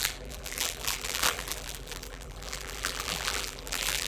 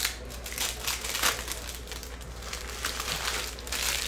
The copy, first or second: first